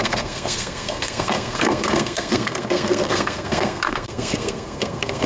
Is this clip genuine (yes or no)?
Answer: no